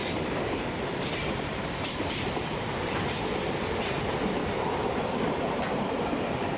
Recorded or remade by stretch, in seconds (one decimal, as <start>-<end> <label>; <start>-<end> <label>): 0.0-1.4 recorded; 1.4-6.6 remade